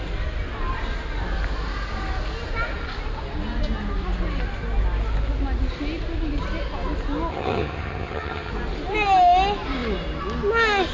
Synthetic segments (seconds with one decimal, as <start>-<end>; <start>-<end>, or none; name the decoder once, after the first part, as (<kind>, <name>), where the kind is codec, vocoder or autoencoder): 7.3-8.5 (vocoder, HiFi-GAN)